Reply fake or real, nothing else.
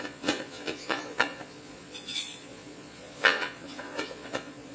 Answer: fake